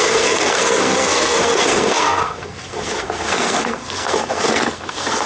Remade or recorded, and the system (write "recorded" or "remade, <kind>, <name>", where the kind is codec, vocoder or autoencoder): remade, codec, SNAC